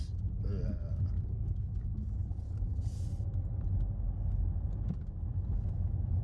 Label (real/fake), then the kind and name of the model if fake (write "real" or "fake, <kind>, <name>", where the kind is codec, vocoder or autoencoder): real